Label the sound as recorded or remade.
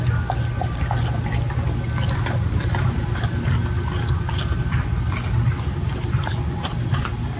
recorded